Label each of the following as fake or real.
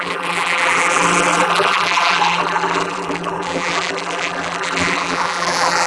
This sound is fake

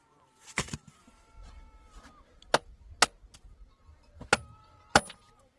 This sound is real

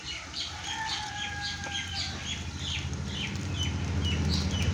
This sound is real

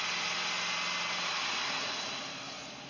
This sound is real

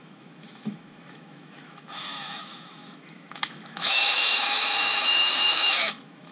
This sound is fake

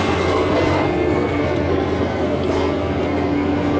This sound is fake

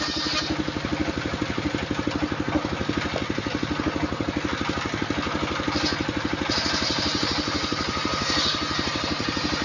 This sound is real